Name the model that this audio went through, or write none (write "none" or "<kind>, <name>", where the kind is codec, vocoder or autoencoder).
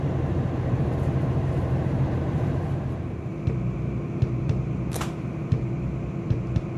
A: vocoder, BigVGAN v2